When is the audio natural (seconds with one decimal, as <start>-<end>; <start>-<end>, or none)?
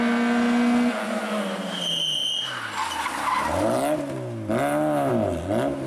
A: 0.0-5.9